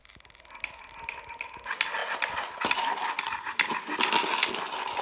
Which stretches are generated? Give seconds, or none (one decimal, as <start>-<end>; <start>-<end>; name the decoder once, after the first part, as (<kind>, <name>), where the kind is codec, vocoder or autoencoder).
none